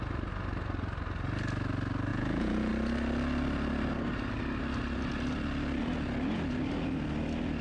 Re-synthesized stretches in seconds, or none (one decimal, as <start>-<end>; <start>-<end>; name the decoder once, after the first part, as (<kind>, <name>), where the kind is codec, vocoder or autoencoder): 2.1-2.7 (vocoder, Vocos)